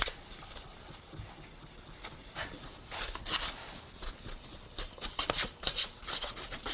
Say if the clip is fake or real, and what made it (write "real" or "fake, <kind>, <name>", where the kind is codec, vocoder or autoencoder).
real